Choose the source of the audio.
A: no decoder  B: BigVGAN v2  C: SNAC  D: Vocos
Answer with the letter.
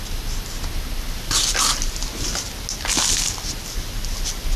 A